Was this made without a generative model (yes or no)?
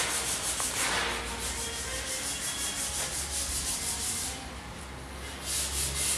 yes